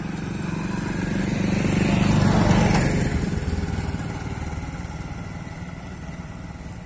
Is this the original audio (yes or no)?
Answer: yes